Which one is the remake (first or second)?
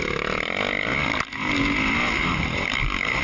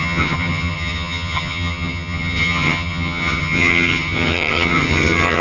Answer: second